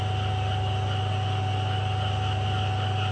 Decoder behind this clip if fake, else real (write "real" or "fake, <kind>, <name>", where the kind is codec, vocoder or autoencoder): real